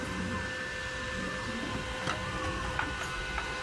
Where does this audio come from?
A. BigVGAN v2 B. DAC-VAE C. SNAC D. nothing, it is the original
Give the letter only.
D